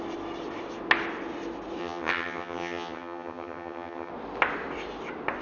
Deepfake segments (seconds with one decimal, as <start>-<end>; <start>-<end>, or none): 1.8-4.1